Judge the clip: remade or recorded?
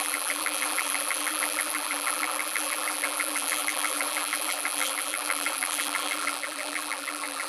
remade